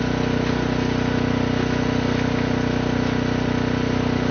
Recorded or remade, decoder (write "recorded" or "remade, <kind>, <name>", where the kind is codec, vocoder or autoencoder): recorded